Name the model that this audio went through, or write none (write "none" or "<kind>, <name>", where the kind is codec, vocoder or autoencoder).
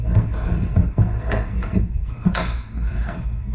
codec, SNAC